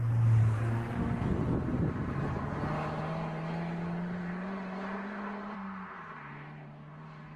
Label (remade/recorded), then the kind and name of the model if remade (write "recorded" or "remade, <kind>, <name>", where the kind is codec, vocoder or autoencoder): recorded